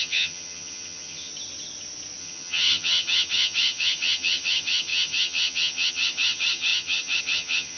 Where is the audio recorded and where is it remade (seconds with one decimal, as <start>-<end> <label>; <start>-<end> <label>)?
0.0-1.3 remade; 1.3-2.2 recorded; 2.2-7.8 remade